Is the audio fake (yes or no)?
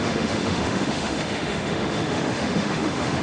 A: yes